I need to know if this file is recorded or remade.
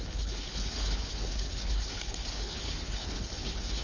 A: remade